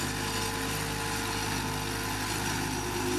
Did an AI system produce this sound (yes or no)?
no